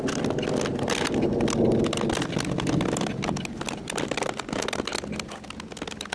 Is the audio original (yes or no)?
yes